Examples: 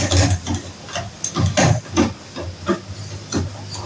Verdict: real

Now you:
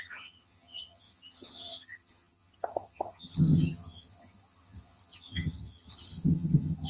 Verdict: fake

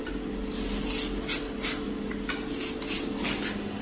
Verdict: real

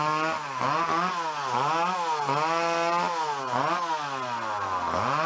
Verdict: real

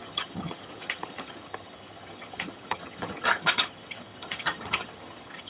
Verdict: fake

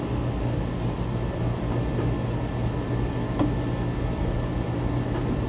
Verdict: real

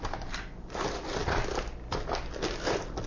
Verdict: real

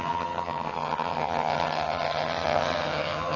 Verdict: fake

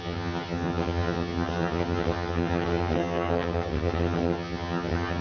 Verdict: fake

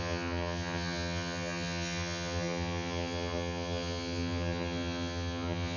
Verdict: fake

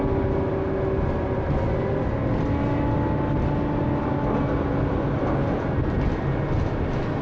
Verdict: real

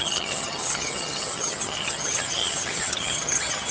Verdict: fake